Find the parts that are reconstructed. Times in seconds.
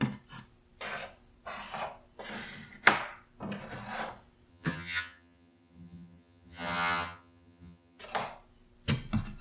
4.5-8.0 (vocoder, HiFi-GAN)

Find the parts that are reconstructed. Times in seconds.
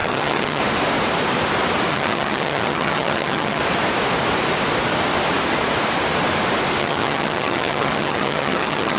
0.0-0.6 (vocoder, HiFi-GAN); 1.9-3.6; 6.8-9.0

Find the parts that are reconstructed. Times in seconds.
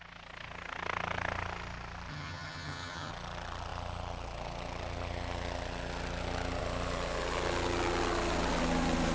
2.1-3.1 (vocoder, HiFi-GAN)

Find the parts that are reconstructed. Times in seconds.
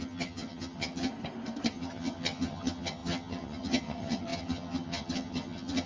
0.0-1.1 (vocoder, HiFi-GAN); 1.7-5.9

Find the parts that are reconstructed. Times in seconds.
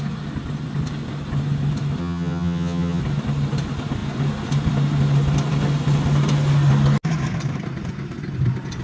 2.0-3.0 (vocoder, HiFi-GAN)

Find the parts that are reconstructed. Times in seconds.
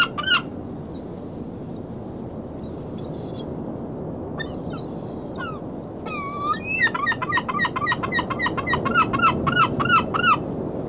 none